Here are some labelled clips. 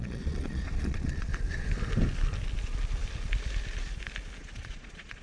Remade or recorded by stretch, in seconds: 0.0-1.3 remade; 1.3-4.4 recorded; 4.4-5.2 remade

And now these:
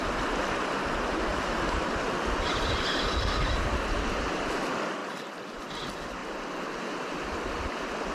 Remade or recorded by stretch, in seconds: 0.0-1.3 recorded; 1.3-4.0 remade; 4.0-5.0 recorded; 5.0-5.6 remade; 5.6-8.1 recorded

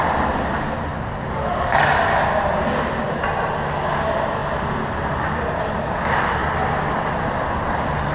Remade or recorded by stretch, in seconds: 0.0-8.1 recorded

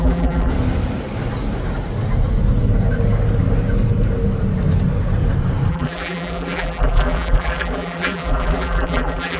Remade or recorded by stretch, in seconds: 0.0-0.5 remade; 0.5-5.7 recorded; 5.7-9.4 remade

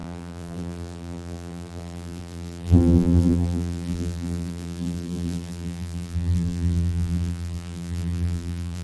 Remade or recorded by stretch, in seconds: 0.0-8.8 remade

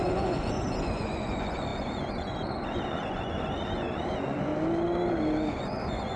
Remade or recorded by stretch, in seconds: 0.0-4.5 remade; 4.5-5.5 recorded; 5.5-6.2 remade

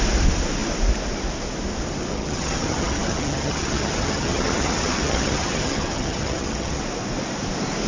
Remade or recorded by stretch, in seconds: 0.0-2.1 recorded; 2.1-6.8 remade; 6.8-7.9 recorded

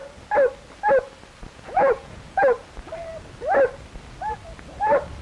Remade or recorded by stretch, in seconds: 0.0-1.5 recorded; 1.5-2.4 remade; 2.4-5.2 recorded